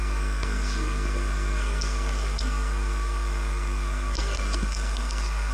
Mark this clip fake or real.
fake